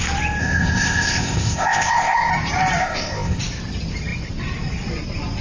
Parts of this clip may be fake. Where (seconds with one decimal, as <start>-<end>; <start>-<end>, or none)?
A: 0.4-2.3; 2.8-3.4